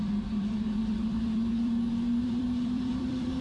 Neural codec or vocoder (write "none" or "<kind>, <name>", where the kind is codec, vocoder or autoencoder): vocoder, BigVGAN v2